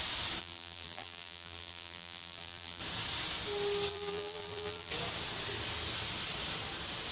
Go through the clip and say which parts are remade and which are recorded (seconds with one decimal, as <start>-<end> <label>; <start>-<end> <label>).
0.0-0.4 recorded; 0.4-2.8 remade; 2.8-3.9 recorded; 3.9-4.9 remade; 4.9-7.1 recorded